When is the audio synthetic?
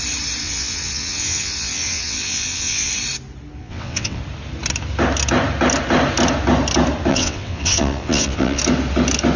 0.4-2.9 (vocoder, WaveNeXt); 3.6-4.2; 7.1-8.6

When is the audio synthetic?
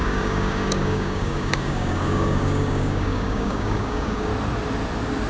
0.0-4.3 (codec, DAC)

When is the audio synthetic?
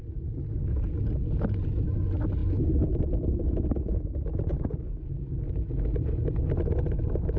none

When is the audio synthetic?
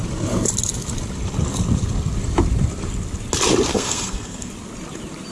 3.7-4.5 (codec, SNAC)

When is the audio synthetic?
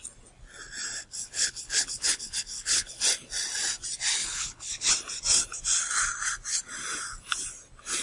1.0-3.0 (codec, HILCodec); 4.2-4.9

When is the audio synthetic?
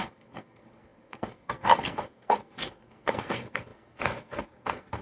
0.0-5.0 (codec, SNAC)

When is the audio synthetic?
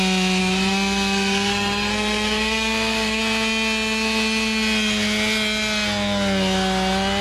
0.4-3.2 (codec, SNAC)